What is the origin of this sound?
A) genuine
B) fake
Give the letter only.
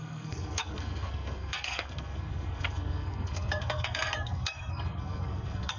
B